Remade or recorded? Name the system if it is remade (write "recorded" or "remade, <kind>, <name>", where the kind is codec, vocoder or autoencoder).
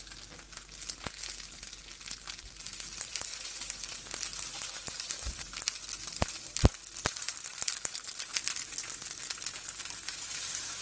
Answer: recorded